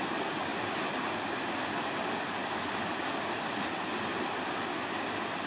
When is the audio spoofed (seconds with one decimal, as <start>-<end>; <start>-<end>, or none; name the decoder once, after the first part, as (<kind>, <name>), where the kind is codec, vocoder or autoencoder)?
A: none

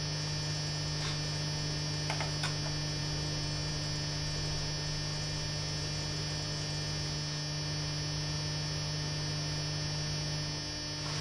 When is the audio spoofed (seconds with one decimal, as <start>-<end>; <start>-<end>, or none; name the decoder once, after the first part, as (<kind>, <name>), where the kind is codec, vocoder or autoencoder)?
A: none

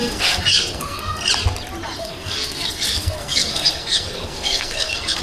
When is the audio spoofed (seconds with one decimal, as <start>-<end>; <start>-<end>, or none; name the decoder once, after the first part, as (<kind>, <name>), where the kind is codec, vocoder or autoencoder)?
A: 0.0-1.3 (codec, SNAC); 2.0-5.2

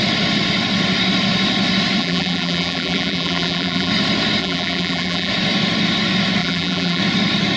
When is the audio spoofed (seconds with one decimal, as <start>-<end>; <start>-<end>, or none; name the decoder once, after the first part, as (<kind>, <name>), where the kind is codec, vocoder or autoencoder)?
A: 2.0-3.9 (vocoder, BigVGAN v2); 4.4-5.3; 6.4-7.0

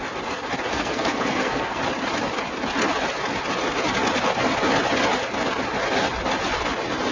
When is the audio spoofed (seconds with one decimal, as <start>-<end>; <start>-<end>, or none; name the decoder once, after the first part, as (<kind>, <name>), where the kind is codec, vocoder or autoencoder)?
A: 0.7-1.8 (codec, SNAC)